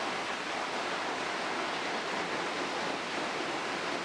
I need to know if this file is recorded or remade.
recorded